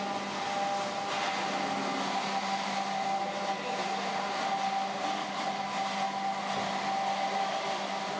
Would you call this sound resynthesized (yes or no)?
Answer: no